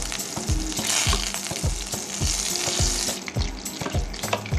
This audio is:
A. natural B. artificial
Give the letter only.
A